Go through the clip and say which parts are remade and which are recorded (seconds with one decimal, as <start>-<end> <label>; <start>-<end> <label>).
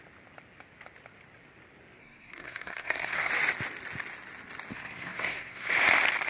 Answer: 0.0-2.0 recorded; 2.0-3.3 remade; 3.3-4.7 recorded; 4.7-5.7 remade; 5.7-6.3 recorded